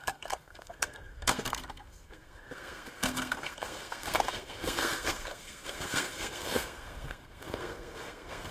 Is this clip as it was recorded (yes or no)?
no